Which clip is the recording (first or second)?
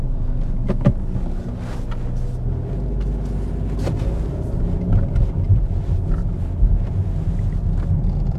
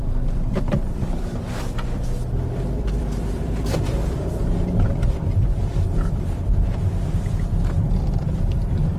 first